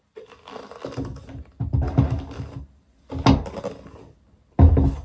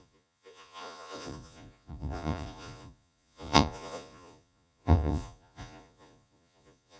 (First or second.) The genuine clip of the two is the first